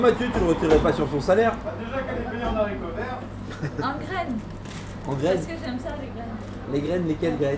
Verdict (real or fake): real